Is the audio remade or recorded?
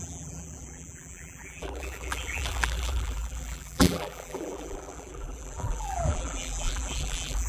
remade